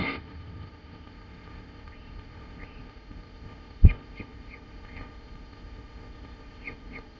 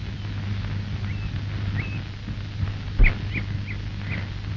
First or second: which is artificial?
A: first